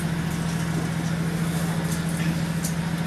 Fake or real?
real